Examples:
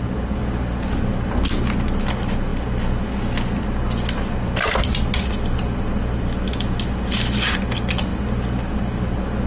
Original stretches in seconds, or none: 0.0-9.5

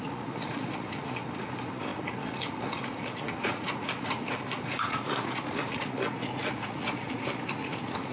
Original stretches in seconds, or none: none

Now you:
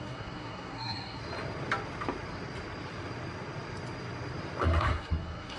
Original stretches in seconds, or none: 1.2-4.6